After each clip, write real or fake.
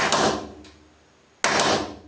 real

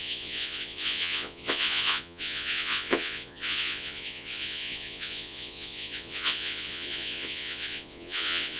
fake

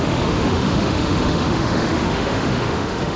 fake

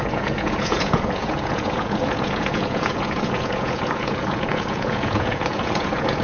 fake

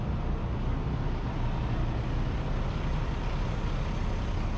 real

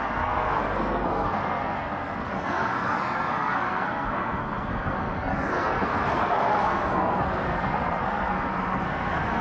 fake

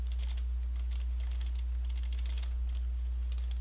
real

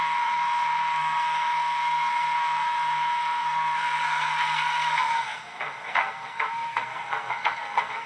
fake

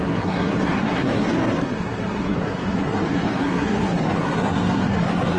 fake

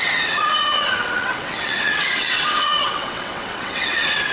fake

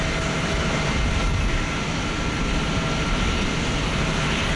real